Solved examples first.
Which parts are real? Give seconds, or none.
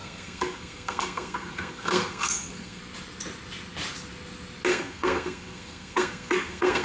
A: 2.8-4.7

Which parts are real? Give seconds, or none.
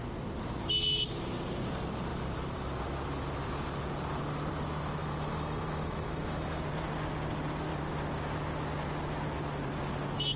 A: 0.0-5.0; 6.6-10.4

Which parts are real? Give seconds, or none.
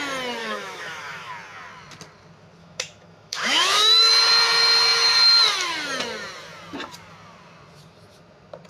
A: 0.0-0.4; 1.3-2.6; 4.1-8.7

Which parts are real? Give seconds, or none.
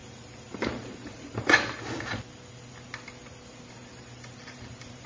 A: 1.8-3.5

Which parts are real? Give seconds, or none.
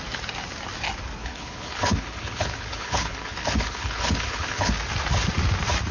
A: 0.0-1.2; 4.7-5.9